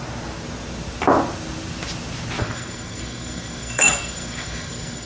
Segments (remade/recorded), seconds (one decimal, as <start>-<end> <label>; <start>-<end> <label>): 0.0-2.4 recorded; 2.4-5.1 remade